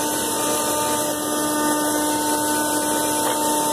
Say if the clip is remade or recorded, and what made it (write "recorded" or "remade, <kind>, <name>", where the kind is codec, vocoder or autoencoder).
recorded